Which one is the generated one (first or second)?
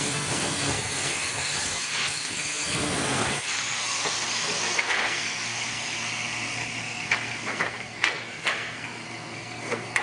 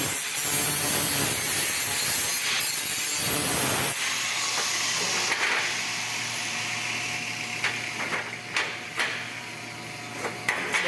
first